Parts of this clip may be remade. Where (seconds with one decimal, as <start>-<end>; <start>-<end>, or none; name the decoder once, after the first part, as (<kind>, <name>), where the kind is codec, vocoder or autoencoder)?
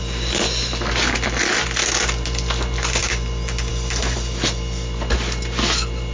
none